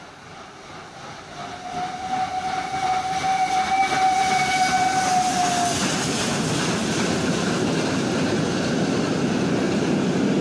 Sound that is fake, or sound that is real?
real